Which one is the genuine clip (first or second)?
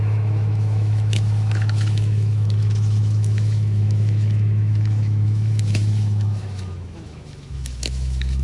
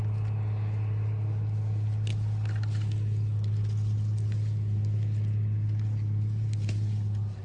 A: second